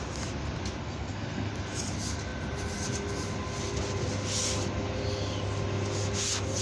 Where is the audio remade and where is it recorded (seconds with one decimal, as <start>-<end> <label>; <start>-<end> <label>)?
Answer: 0.0-0.8 recorded; 0.8-1.5 remade; 1.5-6.6 recorded